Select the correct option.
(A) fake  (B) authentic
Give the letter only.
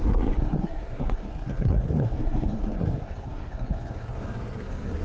A